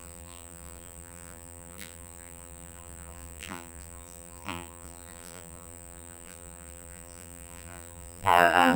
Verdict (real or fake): fake